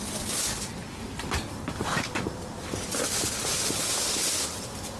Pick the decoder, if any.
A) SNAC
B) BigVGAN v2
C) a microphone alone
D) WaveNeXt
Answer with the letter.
C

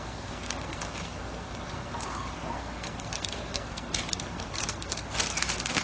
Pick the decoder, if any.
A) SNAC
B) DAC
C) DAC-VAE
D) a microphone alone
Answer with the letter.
A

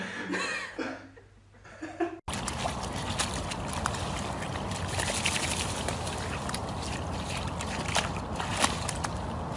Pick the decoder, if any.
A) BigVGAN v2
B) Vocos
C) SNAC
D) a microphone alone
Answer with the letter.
D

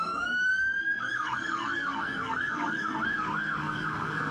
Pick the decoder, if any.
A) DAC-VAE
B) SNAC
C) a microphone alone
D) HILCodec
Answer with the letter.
B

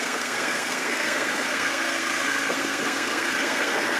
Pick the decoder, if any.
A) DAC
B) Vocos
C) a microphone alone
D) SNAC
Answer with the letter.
D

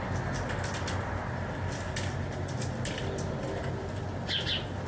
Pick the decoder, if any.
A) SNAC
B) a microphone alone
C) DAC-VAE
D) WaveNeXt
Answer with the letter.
B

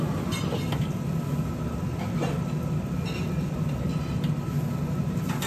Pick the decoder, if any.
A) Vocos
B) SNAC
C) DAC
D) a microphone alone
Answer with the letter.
D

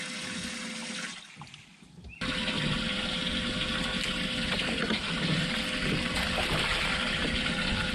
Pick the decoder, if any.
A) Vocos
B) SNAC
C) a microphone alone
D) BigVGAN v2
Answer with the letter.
C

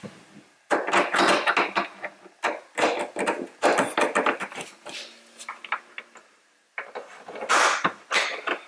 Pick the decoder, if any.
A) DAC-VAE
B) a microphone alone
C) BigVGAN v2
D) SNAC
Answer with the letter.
B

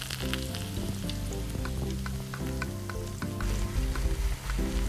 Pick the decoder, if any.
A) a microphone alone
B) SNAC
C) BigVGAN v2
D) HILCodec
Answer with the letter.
A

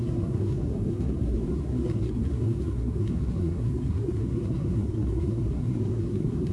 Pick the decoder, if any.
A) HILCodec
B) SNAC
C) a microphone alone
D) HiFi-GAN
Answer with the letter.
B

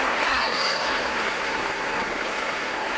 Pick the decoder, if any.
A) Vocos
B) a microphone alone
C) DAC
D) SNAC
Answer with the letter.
D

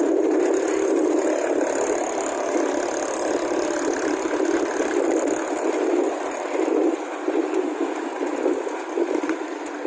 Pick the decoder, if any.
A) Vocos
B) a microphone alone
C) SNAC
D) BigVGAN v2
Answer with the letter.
B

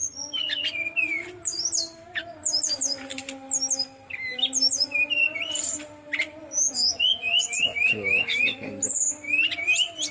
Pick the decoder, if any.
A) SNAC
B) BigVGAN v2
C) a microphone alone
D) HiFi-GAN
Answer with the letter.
C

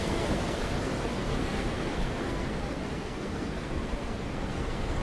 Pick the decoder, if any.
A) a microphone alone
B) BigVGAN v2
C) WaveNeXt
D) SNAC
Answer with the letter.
D